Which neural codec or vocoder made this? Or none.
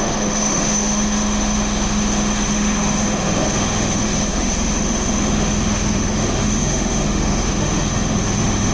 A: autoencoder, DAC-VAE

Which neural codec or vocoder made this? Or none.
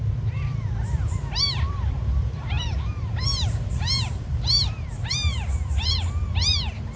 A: vocoder, BigVGAN v2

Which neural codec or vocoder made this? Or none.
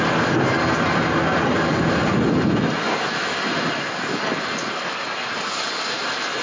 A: none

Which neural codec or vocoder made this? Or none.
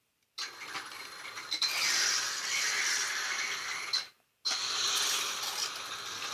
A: none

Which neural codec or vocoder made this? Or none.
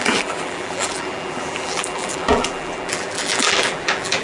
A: vocoder, BigVGAN v2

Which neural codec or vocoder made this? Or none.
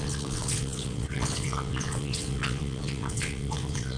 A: vocoder, WaveNeXt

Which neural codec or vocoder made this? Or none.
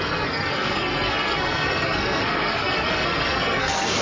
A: codec, SNAC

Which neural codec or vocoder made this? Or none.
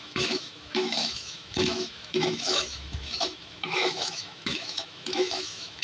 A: autoencoder, DAC-VAE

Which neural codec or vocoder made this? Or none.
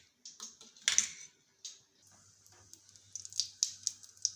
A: none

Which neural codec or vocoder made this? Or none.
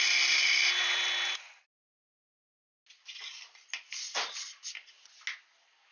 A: none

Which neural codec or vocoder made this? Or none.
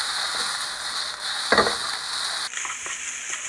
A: none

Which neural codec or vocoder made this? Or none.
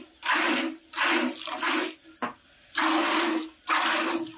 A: none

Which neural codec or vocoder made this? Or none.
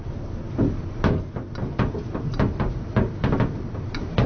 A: none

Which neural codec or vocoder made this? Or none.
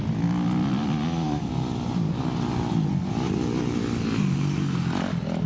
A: none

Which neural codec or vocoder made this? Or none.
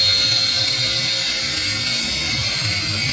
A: none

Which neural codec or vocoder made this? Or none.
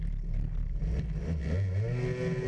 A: none